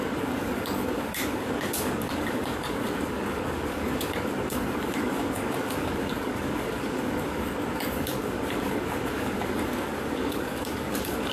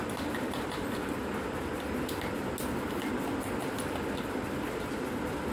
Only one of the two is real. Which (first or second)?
second